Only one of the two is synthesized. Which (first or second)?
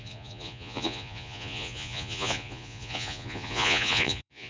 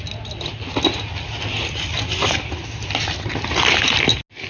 first